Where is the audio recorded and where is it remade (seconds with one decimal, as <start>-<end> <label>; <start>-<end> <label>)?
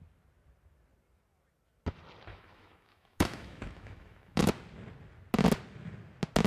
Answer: 0.0-2.3 recorded; 2.3-4.5 remade; 4.5-6.5 recorded